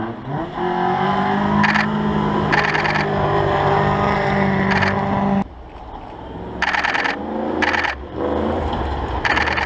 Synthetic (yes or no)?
no